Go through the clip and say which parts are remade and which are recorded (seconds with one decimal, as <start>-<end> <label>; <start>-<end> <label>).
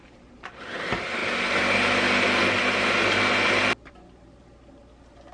0.0-5.3 recorded